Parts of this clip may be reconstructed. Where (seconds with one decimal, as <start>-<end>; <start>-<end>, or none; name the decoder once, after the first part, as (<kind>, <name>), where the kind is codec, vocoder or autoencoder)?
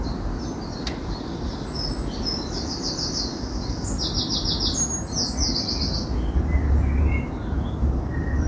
none